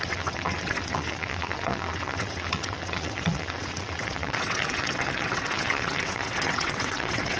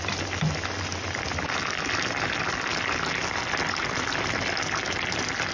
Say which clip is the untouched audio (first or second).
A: second